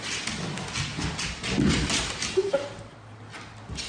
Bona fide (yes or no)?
yes